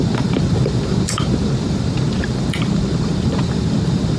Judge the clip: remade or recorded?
remade